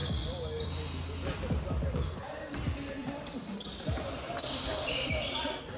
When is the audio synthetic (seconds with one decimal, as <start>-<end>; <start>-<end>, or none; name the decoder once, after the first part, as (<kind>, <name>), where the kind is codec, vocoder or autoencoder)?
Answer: none